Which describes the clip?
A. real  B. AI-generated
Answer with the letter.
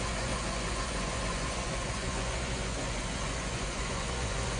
B